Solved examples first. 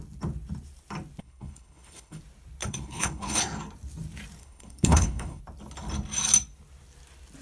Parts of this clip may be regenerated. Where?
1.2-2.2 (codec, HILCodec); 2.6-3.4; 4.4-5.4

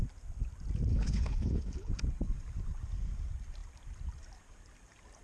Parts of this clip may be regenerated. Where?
0.9-1.9 (codec, HILCodec)

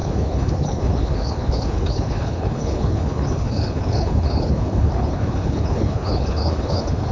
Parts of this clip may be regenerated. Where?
0.0-7.1 (codec, HILCodec)

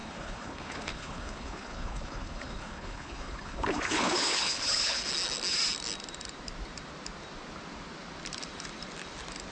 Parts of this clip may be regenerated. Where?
0.0-5.1 (codec, HILCodec)

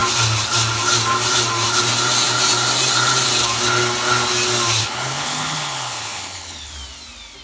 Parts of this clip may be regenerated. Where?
4.8-6.7 (codec, HILCodec)

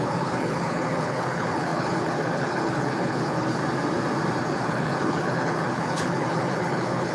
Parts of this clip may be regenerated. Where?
0.0-3.6 (codec, HILCodec); 4.4-7.1